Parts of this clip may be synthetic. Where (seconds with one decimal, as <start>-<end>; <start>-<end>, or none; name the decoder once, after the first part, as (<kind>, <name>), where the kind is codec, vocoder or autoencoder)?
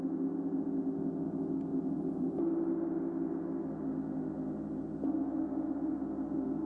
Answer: 1.7-2.4 (vocoder, BigVGAN v2)